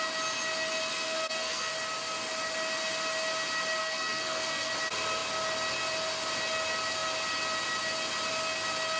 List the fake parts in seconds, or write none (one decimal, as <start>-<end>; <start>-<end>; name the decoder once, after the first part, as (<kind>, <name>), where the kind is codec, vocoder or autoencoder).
0.9-1.7 (codec, SNAC); 3.8-4.7